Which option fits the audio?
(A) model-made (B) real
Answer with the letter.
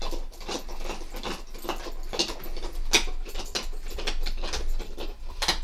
B